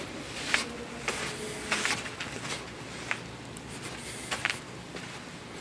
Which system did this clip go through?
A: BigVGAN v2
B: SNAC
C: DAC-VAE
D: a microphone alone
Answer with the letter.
D